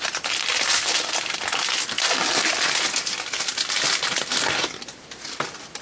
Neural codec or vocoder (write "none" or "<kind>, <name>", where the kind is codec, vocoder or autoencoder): none